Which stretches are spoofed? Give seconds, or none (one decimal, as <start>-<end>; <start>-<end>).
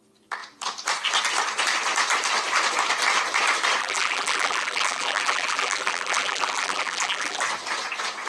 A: 3.8-7.4